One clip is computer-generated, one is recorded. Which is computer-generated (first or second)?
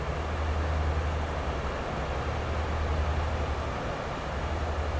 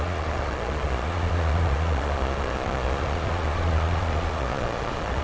second